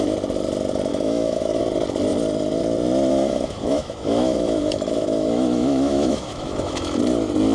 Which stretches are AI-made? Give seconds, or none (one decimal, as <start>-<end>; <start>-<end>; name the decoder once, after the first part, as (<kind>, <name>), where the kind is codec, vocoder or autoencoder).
0.9-1.6 (autoencoder, DAC-VAE); 3.1-7.0